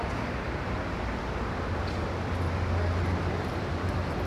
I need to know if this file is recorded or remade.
recorded